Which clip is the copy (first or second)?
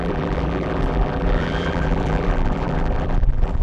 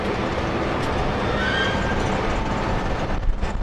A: first